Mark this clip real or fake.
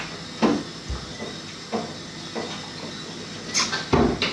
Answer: real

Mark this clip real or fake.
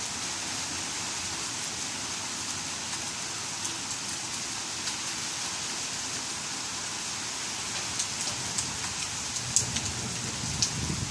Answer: real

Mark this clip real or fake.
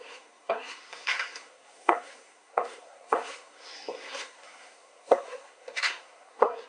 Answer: fake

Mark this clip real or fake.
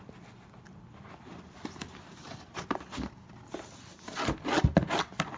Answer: real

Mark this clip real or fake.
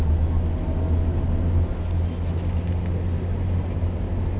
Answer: real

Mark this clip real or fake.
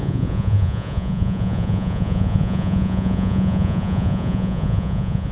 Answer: fake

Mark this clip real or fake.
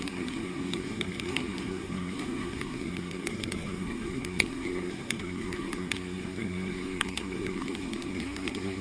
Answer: fake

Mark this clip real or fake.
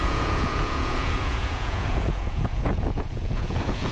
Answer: fake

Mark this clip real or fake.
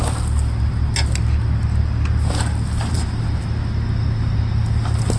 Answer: real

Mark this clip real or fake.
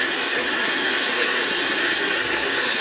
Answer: fake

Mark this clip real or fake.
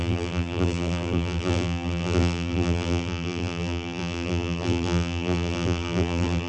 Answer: fake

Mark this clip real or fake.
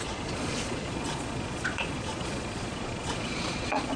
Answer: fake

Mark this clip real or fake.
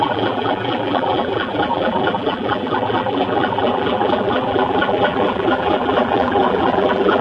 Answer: fake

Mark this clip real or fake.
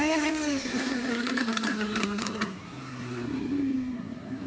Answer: fake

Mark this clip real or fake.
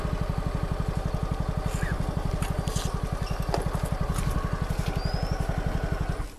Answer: real